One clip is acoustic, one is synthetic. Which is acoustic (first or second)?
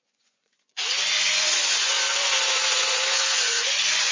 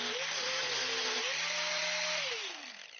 second